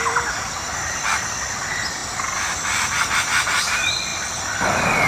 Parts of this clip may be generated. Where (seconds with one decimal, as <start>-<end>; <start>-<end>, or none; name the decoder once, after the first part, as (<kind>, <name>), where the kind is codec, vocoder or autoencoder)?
0.0-4.1 (vocoder, BigVGAN v2)